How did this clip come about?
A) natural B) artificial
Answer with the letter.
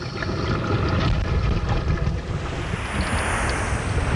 A